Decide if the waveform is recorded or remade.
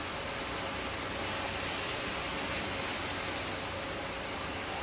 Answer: recorded